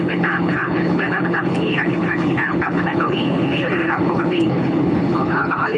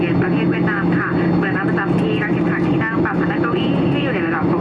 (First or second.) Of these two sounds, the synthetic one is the first